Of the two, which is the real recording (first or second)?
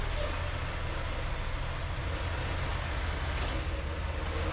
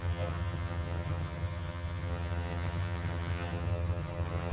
first